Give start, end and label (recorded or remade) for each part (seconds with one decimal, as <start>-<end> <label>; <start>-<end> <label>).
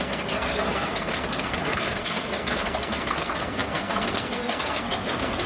0.0-5.5 remade